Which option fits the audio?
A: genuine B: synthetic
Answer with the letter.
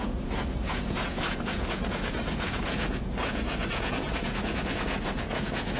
B